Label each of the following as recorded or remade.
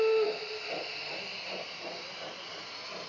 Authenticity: recorded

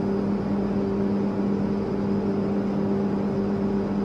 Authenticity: recorded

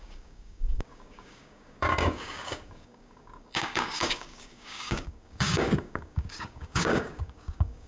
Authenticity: remade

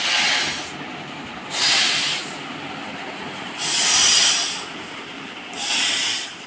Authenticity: recorded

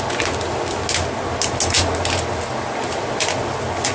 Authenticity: recorded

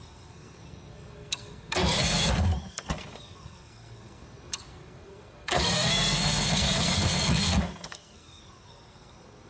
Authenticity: remade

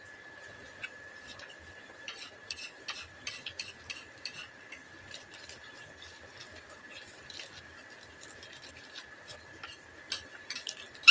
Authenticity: recorded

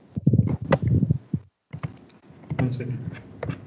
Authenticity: recorded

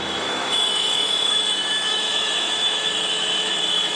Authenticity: remade